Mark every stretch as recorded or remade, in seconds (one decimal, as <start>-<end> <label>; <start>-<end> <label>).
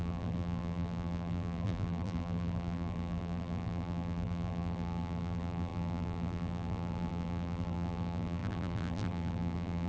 0.0-9.9 remade